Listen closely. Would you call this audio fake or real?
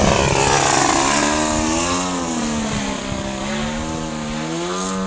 real